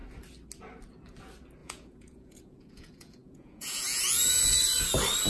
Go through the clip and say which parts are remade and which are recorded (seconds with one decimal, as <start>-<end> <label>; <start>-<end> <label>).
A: 0.0-1.6 recorded; 1.6-4.8 remade; 4.8-5.3 recorded